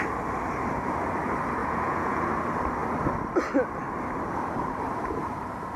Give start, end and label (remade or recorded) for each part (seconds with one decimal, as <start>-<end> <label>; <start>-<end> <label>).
0.0-1.6 recorded; 1.6-2.3 remade; 2.3-5.8 recorded

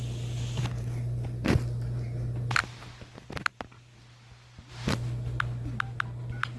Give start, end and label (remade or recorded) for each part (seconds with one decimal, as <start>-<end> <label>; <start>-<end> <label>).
0.0-6.6 recorded

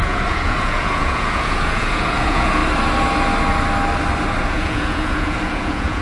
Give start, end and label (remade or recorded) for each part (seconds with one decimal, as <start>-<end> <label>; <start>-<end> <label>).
0.0-2.6 remade; 2.6-4.4 recorded; 4.4-6.0 remade

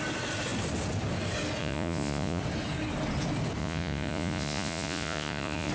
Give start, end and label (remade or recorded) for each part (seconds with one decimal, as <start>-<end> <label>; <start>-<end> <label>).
0.0-1.6 recorded; 1.6-2.4 remade; 2.4-3.6 recorded; 3.6-5.7 remade

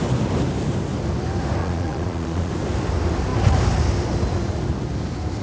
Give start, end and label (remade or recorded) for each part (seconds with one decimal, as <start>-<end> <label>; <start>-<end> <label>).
0.0-1.6 recorded; 1.6-2.5 remade; 2.5-5.4 recorded

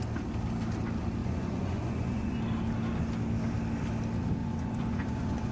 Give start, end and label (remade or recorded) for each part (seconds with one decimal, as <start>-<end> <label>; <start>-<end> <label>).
0.0-1.2 recorded; 1.2-2.4 remade; 2.4-4.4 recorded; 4.4-5.5 remade

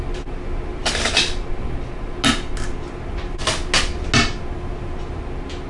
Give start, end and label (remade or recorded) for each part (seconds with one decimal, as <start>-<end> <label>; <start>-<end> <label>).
0.0-5.7 recorded

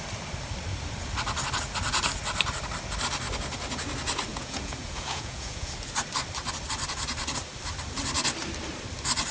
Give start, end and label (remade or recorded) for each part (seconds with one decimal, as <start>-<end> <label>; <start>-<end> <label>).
0.0-4.3 recorded; 4.3-5.7 remade; 5.7-9.3 recorded